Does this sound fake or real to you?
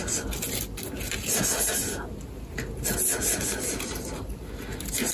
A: real